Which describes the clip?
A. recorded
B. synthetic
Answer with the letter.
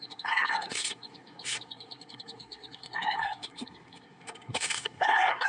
B